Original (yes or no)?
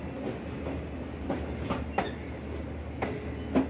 yes